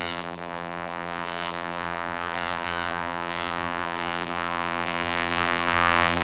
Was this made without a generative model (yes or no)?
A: no